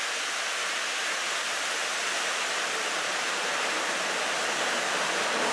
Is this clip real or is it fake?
real